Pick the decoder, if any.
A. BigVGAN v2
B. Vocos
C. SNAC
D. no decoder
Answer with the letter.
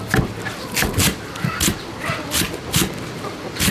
D